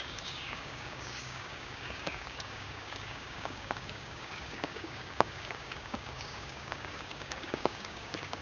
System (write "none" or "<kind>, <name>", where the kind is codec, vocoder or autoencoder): codec, DAC